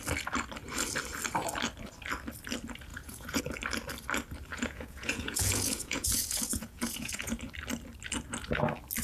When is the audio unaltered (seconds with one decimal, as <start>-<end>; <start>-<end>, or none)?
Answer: 0.0-2.9; 3.4-4.5; 7.4-9.0